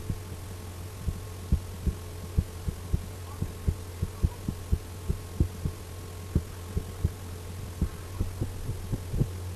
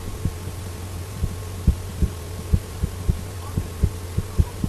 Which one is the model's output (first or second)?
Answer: second